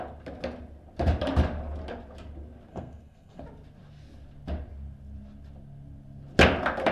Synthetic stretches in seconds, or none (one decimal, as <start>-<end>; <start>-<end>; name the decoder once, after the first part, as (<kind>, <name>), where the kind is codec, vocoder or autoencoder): 2.7-3.4 (codec, SNAC)